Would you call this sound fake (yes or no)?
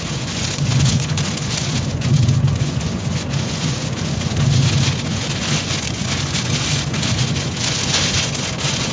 yes